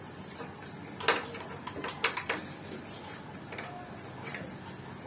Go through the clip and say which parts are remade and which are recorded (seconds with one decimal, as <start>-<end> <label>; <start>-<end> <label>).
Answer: 0.0-5.1 recorded